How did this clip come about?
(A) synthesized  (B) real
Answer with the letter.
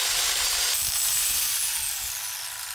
B